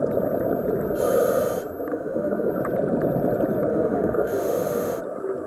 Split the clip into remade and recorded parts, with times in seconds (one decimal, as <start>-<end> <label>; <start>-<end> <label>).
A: 0.0-1.9 recorded; 1.9-2.5 remade; 2.5-3.7 recorded; 3.7-5.0 remade; 5.0-5.5 recorded